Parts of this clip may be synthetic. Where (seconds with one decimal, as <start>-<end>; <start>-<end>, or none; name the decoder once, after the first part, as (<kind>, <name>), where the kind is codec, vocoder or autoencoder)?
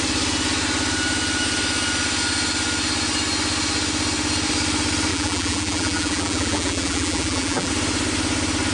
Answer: 5.1-7.7 (vocoder, BigVGAN v2)